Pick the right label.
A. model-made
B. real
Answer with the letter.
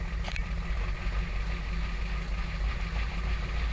B